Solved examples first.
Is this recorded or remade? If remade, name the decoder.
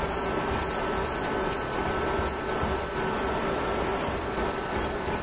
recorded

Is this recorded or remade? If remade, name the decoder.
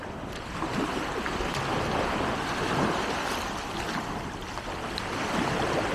recorded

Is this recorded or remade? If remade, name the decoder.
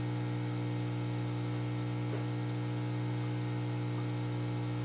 recorded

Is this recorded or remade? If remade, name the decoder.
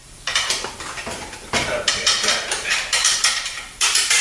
remade, vocoder, BigVGAN v2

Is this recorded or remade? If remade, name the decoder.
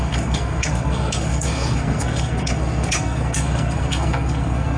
remade, codec, SNAC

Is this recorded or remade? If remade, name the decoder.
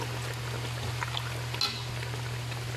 recorded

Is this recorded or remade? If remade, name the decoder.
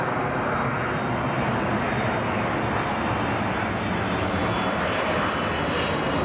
recorded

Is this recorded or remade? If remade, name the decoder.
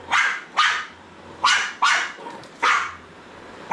remade, vocoder, BigVGAN v2